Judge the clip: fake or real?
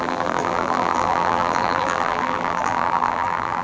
fake